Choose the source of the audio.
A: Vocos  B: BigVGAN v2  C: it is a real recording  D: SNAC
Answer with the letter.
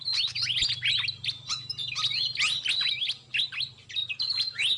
C